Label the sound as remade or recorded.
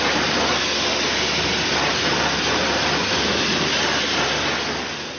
recorded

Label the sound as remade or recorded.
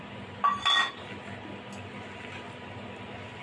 recorded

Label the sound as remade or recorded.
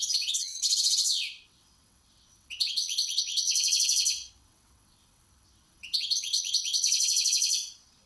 remade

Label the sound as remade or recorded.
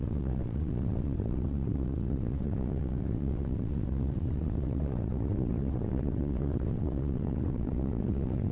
remade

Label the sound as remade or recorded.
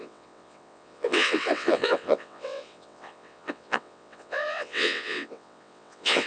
remade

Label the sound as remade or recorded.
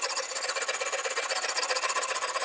recorded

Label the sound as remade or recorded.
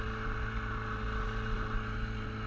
recorded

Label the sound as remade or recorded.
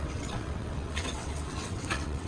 remade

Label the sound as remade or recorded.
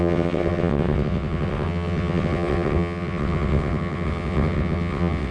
remade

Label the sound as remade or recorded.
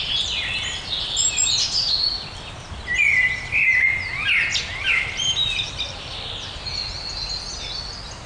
recorded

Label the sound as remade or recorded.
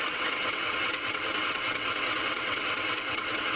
remade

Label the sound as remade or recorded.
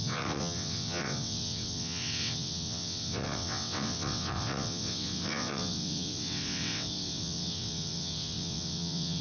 remade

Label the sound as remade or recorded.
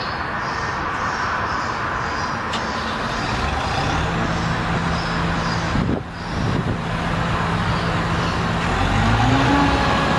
recorded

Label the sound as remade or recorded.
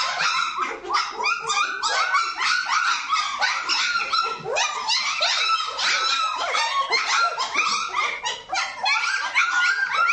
recorded